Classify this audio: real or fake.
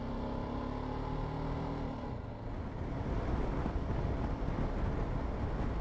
real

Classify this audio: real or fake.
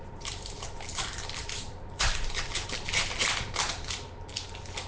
real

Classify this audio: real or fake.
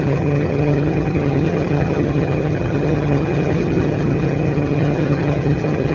fake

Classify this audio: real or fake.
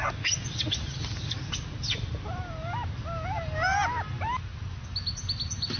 real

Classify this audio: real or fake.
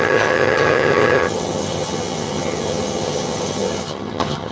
fake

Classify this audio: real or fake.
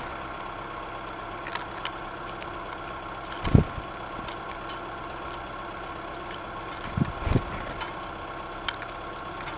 real